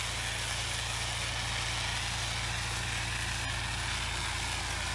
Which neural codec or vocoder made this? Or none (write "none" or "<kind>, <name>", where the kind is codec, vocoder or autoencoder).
none